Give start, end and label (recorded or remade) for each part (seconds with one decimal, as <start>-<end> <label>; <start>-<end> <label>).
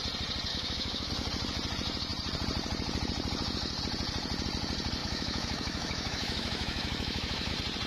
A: 0.0-0.5 recorded; 0.5-1.1 remade; 1.1-5.0 recorded; 5.0-7.5 remade; 7.5-7.9 recorded